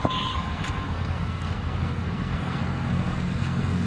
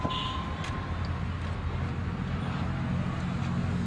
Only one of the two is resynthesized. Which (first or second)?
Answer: first